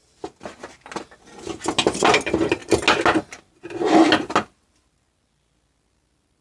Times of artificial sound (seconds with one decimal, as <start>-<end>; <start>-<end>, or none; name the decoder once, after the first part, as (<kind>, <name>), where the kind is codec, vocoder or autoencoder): none